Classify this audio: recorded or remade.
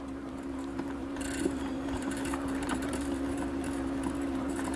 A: remade